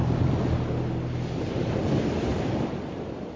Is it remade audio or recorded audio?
recorded